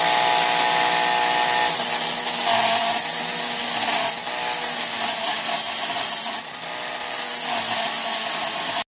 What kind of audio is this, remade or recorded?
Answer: recorded